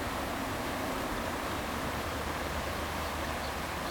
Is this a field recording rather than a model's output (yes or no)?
no